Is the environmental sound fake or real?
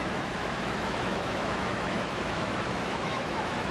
fake